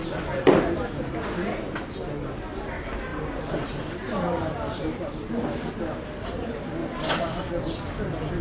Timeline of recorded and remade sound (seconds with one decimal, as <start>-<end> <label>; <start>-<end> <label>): 0.0-3.1 recorded; 3.1-5.7 remade; 5.7-6.8 recorded; 6.8-7.4 remade; 7.4-8.4 recorded